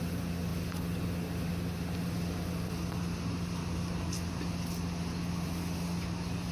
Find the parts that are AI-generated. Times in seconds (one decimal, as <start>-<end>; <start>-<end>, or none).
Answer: none